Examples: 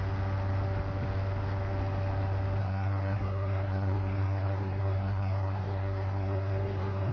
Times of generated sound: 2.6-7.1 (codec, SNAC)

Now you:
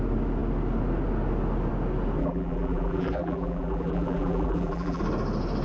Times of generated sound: 2.2-5.0 (vocoder, BigVGAN v2)

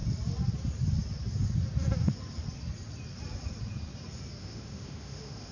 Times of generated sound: 4.4-5.5 (autoencoder, DAC-VAE)

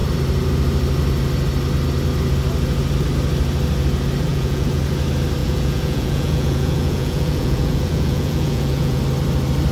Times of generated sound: 4.3-4.8 (vocoder, Vocos); 5.4-9.0

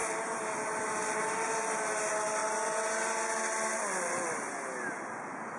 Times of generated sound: none

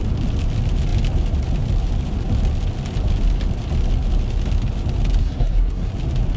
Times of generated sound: 5.2-5.9 (codec, SNAC)

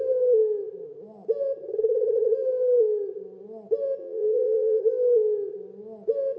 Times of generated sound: 4.0-4.8 (vocoder, BigVGAN v2)

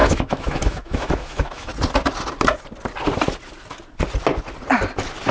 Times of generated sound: 0.0-1.7 (autoencoder, DAC-VAE)